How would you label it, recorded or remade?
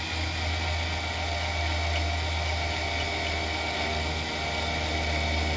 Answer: recorded